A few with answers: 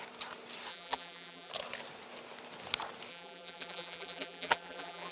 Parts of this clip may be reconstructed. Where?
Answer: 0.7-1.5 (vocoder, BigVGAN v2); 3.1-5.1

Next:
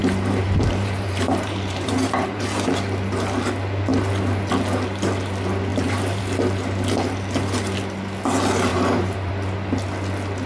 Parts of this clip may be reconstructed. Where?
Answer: 0.0-2.4 (vocoder, BigVGAN v2); 5.7-6.2; 8.7-9.3

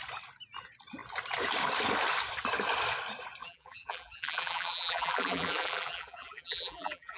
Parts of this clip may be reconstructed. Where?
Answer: 3.4-7.2 (vocoder, BigVGAN v2)

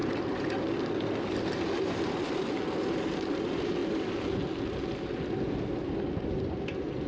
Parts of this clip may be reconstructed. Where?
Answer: none

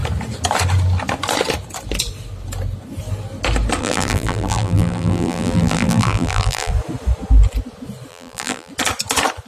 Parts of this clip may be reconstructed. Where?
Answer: 3.8-6.7 (vocoder, BigVGAN v2); 8.1-8.7

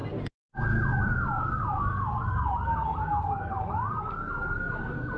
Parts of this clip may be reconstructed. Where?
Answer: none

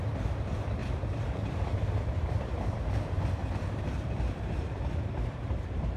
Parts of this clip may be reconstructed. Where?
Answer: 0.8-1.9 (vocoder, BigVGAN v2); 3.4-6.0

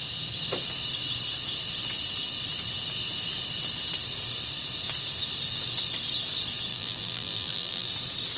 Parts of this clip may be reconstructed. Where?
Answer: 6.7-7.9 (vocoder, BigVGAN v2)